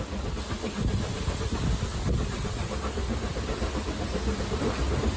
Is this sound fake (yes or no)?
no